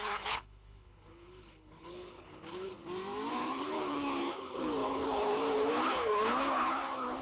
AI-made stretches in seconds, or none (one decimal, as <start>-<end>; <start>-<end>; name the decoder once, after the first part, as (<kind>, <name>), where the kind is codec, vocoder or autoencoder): 0.0-2.8 (codec, HILCodec); 3.3-7.2